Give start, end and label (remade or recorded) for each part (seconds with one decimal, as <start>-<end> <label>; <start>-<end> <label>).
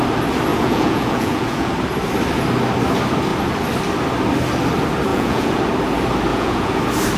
0.0-0.5 recorded; 0.5-1.7 remade; 1.7-5.1 recorded; 5.1-5.6 remade; 5.6-6.3 recorded; 6.3-6.8 remade; 6.8-7.2 recorded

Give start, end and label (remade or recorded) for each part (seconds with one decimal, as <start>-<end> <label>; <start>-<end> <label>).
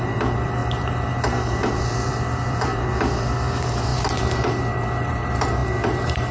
0.0-6.3 remade